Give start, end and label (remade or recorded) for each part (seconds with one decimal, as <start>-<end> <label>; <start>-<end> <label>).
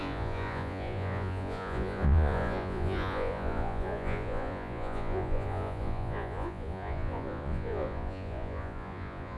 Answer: 0.0-9.4 remade